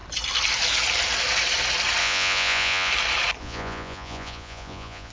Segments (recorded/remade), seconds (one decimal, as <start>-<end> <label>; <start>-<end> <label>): 0.0-2.0 recorded; 2.0-2.9 remade; 2.9-3.4 recorded; 3.4-5.1 remade